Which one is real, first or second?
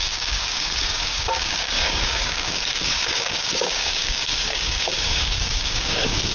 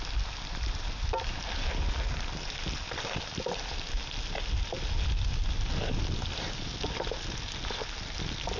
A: second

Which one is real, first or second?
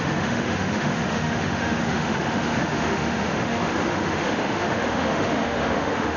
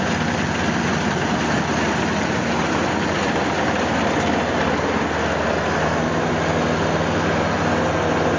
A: second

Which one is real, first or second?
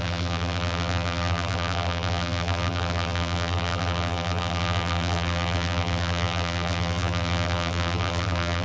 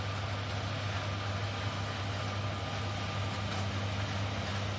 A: second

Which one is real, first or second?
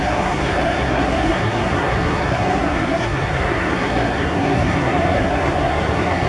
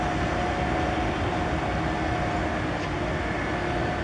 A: second